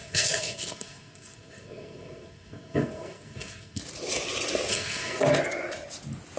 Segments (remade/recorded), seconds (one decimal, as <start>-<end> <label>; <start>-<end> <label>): 0.0-3.8 remade; 3.8-4.7 recorded; 4.7-5.2 remade; 5.2-6.4 recorded